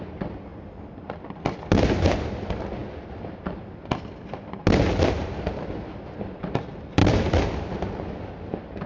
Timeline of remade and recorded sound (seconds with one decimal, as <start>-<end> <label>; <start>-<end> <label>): 0.0-8.9 recorded